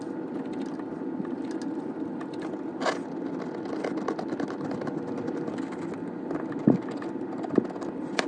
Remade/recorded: recorded